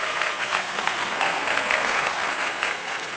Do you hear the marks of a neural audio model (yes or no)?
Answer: yes